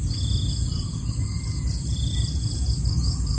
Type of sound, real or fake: real